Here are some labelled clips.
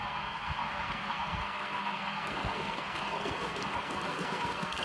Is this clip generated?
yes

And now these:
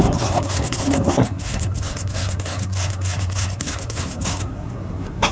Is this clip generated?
yes